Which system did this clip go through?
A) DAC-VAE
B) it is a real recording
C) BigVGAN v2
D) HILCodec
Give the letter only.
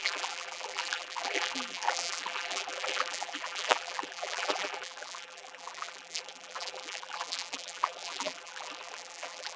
C